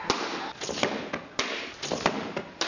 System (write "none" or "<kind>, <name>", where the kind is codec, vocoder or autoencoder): none